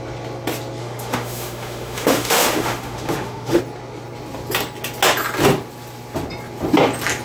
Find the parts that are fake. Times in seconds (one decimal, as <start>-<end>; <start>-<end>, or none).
0.8-3.6